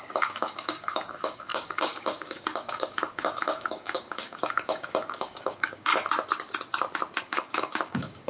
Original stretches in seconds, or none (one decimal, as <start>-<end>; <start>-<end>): 5.9-7.2